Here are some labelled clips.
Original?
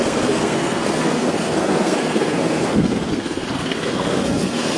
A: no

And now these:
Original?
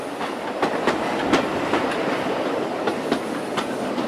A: yes